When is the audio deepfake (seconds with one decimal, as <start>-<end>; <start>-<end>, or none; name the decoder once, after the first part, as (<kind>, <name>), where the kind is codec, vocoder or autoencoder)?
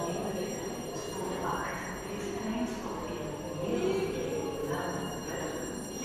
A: 4.6-5.4 (autoencoder, DAC-VAE)